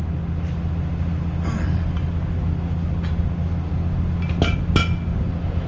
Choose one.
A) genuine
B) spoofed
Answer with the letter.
A